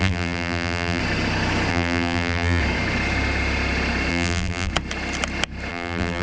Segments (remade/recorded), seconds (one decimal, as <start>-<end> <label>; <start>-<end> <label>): 0.0-1.0 remade; 1.0-1.7 recorded; 1.7-2.6 remade; 2.6-4.1 recorded; 4.1-4.7 remade; 4.7-5.7 recorded; 5.7-6.2 remade